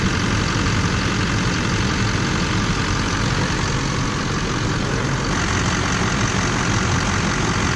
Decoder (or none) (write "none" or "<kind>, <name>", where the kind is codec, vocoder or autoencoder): none